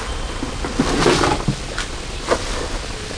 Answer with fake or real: real